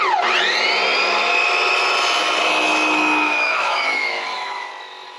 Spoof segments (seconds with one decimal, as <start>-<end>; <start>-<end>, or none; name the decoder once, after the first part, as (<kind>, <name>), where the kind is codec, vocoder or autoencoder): 2.4-4.7 (autoencoder, DAC-VAE)